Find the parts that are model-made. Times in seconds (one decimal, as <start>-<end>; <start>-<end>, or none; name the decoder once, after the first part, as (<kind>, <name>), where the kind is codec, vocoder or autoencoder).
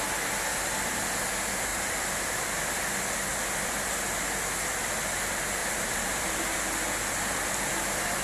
1.7-2.4 (vocoder, BigVGAN v2); 3.3-3.9; 5.6-6.4